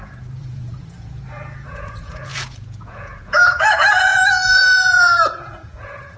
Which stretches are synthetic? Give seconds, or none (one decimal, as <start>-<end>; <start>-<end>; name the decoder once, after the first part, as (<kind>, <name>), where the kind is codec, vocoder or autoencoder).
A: 0.0-6.2 (vocoder, Vocos)